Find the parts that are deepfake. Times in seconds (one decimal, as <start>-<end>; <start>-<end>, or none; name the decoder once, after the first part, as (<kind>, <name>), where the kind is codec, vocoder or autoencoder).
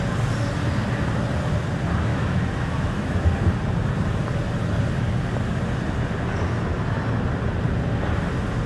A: 2.1-3.2 (autoencoder, DAC-VAE)